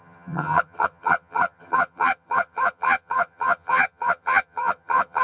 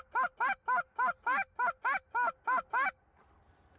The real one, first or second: second